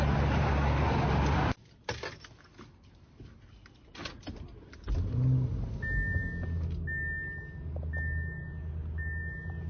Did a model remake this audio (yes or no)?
no